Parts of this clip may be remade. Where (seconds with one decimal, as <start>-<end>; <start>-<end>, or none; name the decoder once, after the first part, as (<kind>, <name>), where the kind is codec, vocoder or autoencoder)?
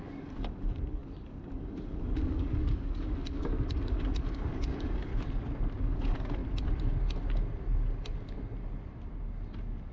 0.0-5.1 (codec, DAC); 5.8-6.4